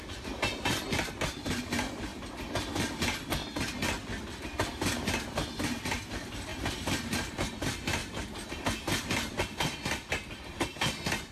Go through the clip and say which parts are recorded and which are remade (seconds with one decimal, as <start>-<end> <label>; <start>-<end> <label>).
0.0-2.1 remade; 2.1-2.7 recorded; 2.7-3.4 remade; 3.4-4.2 recorded; 4.2-8.0 remade; 8.0-9.0 recorded; 9.0-11.3 remade